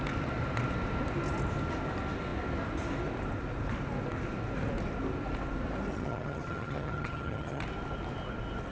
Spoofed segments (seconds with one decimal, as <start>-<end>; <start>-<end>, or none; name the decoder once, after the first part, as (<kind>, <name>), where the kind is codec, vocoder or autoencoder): 5.9-7.6 (vocoder, HiFi-GAN)